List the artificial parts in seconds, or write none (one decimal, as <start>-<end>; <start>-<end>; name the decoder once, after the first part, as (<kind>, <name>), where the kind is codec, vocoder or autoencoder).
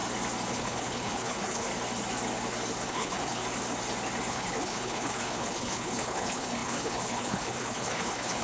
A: 0.5-1.7 (codec, HILCodec); 2.9-3.4; 4.3-8.4